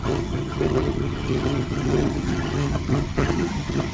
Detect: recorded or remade remade